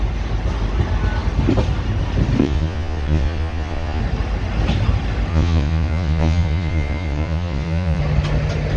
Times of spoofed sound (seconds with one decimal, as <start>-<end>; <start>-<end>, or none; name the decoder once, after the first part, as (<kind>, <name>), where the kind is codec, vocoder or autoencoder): 2.4-4.0 (vocoder, Vocos); 5.3-8.0